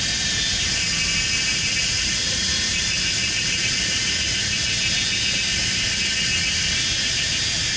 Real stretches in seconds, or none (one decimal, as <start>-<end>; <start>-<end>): 0.0-1.5; 4.6-7.8